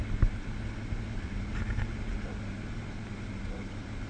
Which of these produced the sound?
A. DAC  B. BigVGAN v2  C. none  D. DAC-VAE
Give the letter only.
C